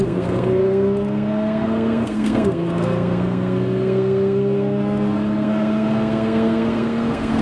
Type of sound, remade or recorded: remade